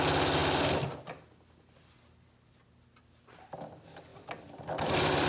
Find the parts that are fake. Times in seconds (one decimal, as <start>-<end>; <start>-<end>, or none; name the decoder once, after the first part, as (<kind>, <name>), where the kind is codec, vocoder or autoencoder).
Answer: none